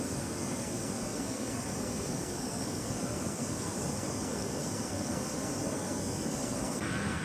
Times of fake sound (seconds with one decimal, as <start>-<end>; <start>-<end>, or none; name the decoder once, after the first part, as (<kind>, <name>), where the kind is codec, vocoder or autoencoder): 0.0-7.2 (codec, SNAC)